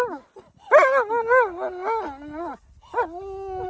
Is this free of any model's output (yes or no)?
yes